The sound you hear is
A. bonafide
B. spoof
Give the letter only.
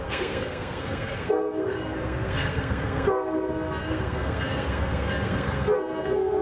B